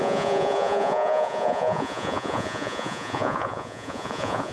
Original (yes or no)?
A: no